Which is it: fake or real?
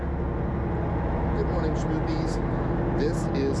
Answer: real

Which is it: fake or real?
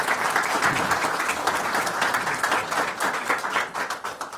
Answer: real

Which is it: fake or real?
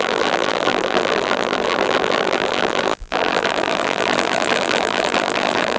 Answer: fake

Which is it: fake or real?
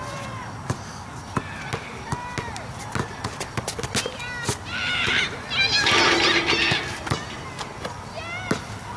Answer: real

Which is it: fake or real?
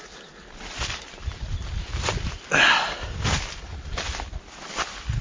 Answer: real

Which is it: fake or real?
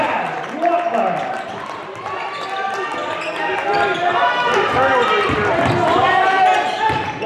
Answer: real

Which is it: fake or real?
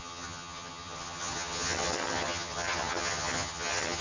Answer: fake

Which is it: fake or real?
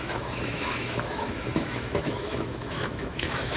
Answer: fake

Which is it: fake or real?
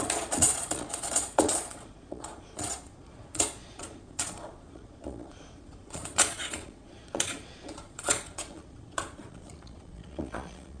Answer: fake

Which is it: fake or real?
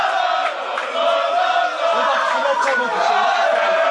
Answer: real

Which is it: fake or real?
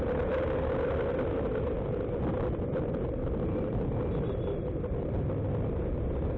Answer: real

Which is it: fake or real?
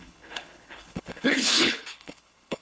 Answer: fake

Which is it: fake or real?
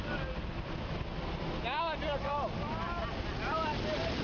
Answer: real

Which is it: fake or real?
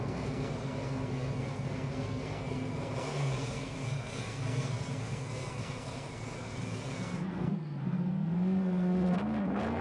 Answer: fake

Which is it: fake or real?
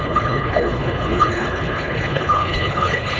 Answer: fake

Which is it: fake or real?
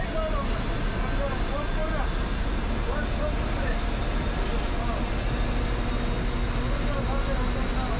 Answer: real